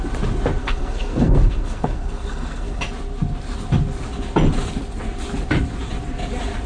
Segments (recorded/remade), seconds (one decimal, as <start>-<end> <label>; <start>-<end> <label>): 0.0-0.6 recorded; 0.6-2.8 remade; 2.8-6.7 recorded